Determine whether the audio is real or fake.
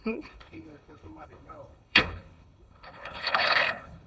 fake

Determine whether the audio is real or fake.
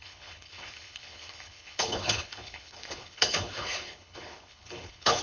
fake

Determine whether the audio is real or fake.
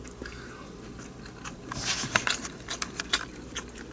real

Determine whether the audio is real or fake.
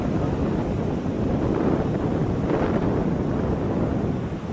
real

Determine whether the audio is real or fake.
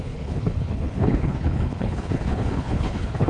fake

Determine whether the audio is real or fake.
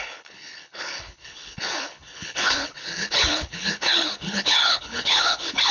fake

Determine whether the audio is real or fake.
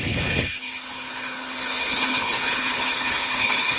fake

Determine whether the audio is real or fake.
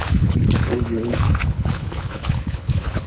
fake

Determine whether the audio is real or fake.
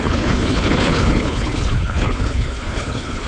fake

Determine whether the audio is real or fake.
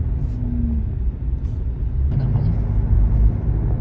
real